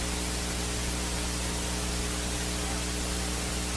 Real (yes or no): yes